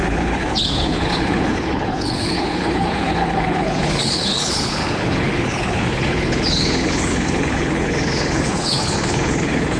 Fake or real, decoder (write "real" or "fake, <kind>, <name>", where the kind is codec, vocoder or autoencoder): fake, codec, HILCodec